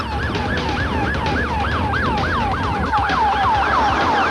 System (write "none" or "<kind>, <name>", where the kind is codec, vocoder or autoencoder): none